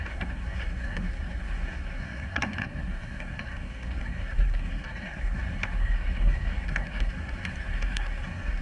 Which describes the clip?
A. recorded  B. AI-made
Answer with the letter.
B